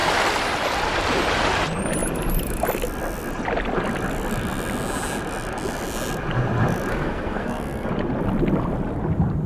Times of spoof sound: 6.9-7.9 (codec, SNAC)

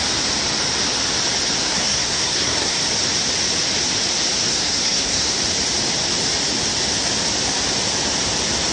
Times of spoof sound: 1.6-2.8 (codec, SNAC); 4.5-5.3